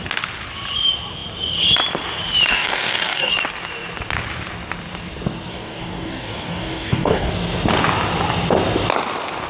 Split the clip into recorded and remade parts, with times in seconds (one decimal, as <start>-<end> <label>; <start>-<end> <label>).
0.0-2.5 recorded; 2.5-3.3 remade; 3.3-5.5 recorded; 5.5-7.3 remade; 7.3-9.5 recorded